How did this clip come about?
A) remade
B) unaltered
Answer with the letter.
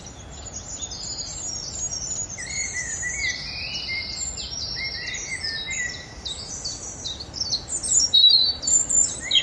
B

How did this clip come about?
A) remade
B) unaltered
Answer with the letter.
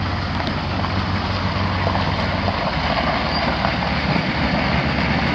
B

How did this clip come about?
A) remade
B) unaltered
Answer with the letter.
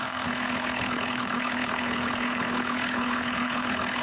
A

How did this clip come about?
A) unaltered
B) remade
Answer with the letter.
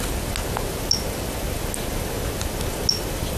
A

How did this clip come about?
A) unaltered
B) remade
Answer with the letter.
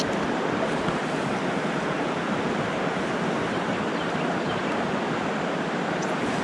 A